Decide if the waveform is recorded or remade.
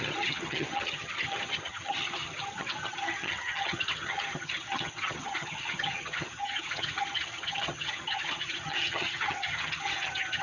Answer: remade